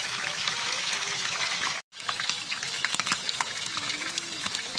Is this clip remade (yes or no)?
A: yes